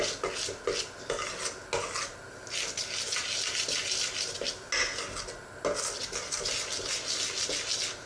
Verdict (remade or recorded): recorded